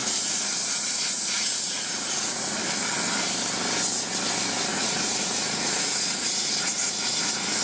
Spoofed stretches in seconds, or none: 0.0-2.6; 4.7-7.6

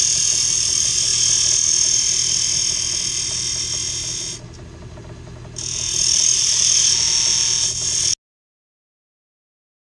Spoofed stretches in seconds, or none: none

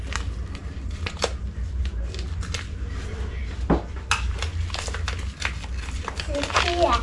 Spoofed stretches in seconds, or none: none